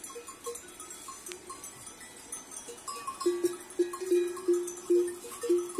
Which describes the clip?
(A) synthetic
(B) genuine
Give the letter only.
B